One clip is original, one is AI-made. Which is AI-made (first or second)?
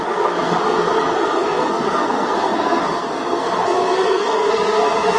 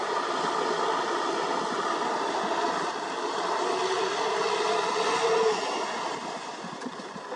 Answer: first